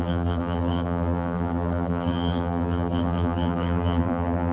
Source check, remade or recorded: remade